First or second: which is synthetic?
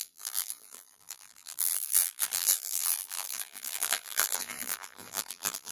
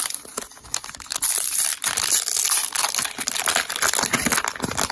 first